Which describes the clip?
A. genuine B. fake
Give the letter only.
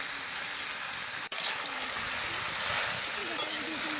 A